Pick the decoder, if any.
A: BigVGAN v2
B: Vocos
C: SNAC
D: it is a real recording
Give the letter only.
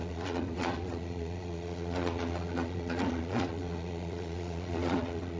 B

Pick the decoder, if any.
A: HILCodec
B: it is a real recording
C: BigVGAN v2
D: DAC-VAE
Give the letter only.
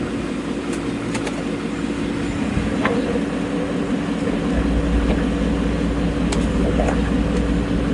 B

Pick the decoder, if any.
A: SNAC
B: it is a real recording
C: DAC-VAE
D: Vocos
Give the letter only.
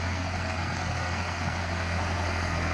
A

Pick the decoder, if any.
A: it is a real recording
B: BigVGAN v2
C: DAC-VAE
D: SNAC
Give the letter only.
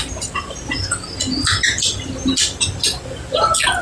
A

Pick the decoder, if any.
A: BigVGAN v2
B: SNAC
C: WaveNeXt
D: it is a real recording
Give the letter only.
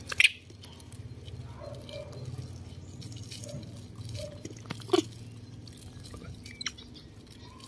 D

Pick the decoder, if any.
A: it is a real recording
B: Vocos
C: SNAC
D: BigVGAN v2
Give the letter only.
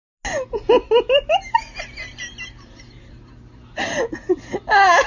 A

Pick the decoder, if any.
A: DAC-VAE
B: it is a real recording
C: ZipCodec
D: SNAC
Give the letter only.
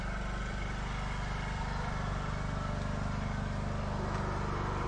B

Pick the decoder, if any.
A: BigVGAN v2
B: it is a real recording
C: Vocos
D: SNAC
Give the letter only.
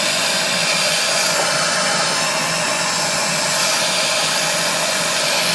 C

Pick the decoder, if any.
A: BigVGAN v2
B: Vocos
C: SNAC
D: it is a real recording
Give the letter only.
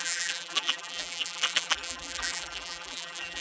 A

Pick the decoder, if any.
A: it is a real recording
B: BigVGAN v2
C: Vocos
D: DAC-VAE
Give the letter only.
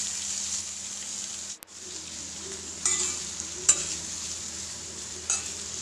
A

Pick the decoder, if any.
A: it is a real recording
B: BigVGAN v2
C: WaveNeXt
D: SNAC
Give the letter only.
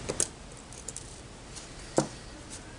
A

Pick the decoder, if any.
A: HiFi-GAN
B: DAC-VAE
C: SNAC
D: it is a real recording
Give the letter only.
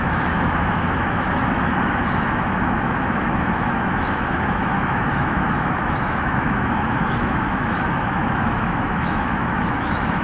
B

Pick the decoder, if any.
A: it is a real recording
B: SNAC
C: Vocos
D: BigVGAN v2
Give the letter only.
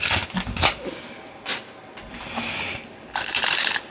A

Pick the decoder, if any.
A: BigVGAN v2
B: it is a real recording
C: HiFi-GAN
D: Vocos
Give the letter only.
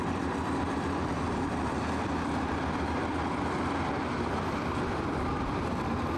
A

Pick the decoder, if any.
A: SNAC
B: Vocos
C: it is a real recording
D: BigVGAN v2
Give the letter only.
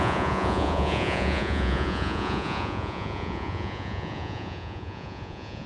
B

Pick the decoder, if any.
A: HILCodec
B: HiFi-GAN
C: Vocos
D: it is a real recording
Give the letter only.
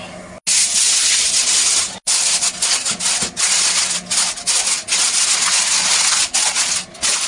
D